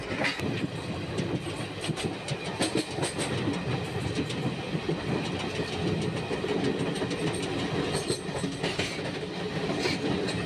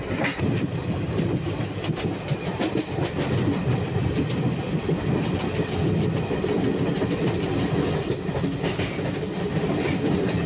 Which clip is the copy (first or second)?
second